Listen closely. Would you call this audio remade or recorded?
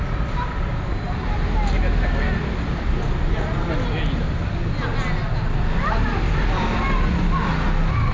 recorded